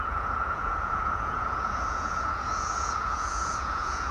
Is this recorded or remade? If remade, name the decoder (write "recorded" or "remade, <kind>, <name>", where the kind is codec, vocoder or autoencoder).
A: remade, vocoder, Vocos